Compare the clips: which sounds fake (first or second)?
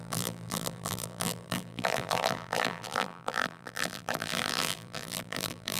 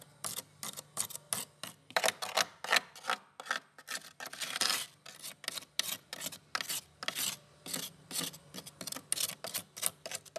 first